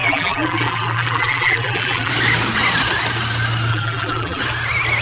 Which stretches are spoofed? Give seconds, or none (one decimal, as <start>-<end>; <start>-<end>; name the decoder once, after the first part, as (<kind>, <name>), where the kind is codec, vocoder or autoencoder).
0.0-2.1 (vocoder, BigVGAN v2); 3.7-4.4